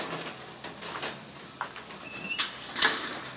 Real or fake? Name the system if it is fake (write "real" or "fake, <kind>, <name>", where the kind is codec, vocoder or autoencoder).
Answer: real